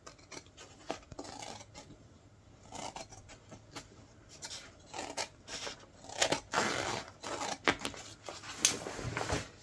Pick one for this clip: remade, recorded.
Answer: recorded